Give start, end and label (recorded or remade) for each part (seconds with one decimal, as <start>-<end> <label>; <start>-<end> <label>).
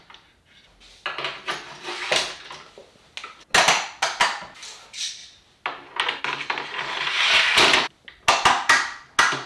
0.0-9.5 recorded